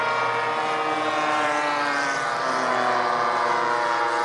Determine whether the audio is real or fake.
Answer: fake